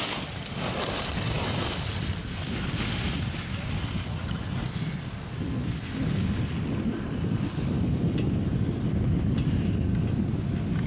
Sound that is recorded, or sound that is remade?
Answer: recorded